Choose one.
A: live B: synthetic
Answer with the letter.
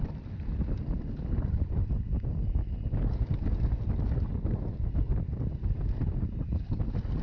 A